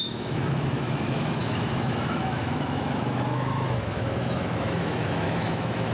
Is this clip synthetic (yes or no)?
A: yes